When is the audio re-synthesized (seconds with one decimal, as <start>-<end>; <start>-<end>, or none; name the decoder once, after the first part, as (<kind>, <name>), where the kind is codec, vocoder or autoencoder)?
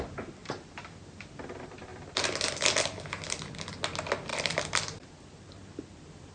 0.4-1.0 (vocoder, BigVGAN v2); 4.3-5.1